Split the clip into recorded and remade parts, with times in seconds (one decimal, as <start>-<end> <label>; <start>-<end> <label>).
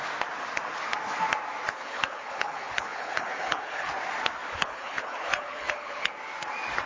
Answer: 0.0-1.7 recorded; 1.7-3.9 remade; 3.9-4.5 recorded; 4.5-6.1 remade; 6.1-6.9 recorded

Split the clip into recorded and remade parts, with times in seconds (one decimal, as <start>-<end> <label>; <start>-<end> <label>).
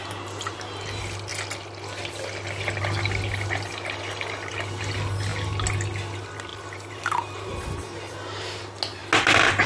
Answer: 0.0-6.5 recorded; 6.5-8.1 remade; 8.1-9.7 recorded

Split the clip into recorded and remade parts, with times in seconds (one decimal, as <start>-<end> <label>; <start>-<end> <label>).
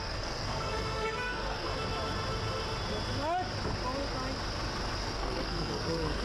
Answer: 0.0-1.7 remade; 1.7-5.0 recorded; 5.0-6.2 remade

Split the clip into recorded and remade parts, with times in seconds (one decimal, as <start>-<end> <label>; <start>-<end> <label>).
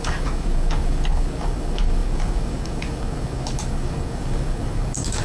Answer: 0.0-5.2 remade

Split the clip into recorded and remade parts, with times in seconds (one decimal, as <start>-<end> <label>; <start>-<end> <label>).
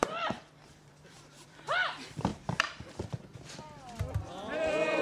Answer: 0.0-5.0 remade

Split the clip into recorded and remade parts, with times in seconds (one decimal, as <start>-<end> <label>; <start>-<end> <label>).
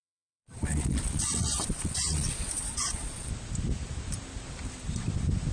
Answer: 0.0-3.3 remade; 3.3-5.5 recorded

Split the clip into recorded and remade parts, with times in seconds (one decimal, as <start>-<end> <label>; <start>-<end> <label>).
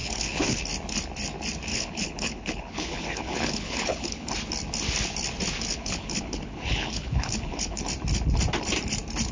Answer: 0.0-0.6 remade; 0.6-1.7 recorded; 1.7-4.3 remade; 4.3-5.7 recorded; 5.7-7.8 remade; 7.8-9.3 recorded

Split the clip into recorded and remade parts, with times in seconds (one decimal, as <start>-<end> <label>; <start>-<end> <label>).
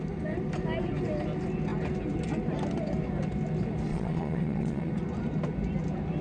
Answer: 0.0-3.9 recorded; 3.9-4.9 remade; 4.9-6.2 recorded